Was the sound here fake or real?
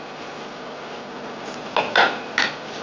real